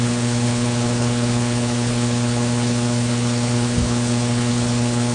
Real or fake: fake